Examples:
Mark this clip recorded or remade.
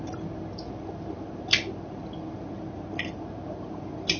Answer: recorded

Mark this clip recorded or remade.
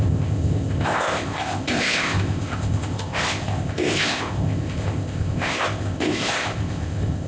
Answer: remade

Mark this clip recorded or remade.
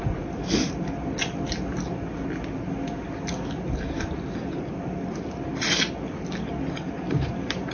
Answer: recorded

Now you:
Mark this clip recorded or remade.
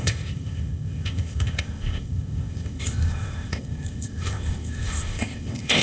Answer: remade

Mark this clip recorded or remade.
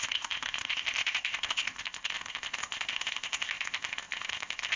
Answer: remade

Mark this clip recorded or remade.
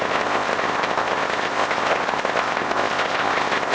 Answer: remade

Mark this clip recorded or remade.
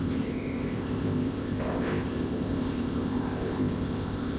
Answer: remade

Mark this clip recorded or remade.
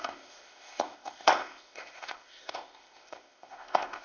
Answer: remade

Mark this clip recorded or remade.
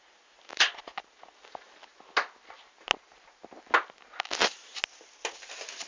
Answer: recorded